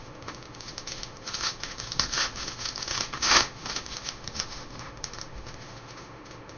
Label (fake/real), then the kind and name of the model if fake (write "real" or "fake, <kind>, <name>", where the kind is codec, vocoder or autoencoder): fake, autoencoder, DAC-VAE